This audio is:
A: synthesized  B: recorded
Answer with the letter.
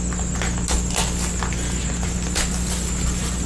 B